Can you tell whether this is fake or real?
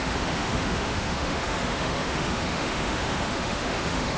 fake